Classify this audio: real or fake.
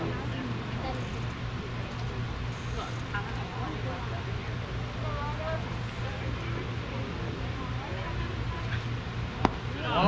real